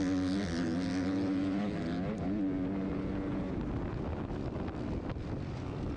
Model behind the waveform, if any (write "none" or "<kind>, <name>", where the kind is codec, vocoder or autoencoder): none